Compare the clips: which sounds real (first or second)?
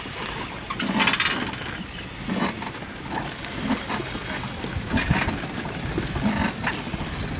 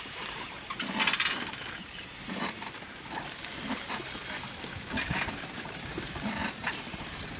first